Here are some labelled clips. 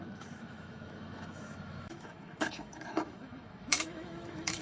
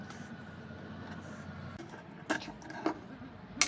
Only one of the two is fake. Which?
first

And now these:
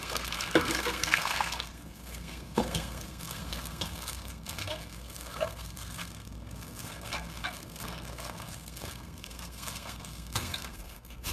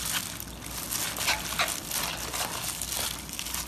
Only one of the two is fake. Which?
first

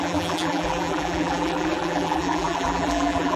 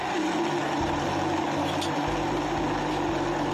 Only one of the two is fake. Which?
first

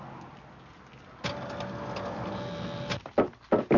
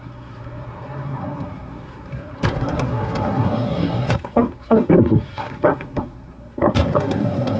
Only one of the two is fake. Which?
second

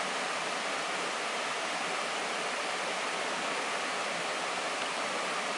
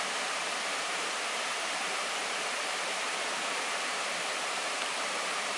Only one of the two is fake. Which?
second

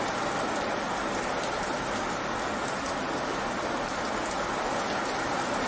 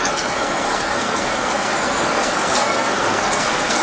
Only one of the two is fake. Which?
second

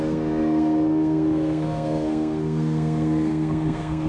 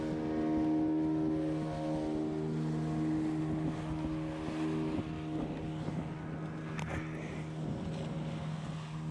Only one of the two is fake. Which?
first